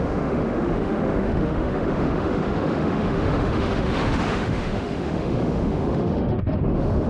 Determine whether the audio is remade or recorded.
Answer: remade